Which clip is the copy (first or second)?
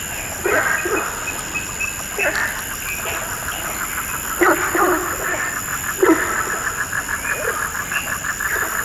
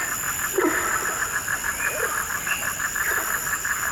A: second